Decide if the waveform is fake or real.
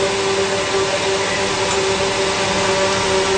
real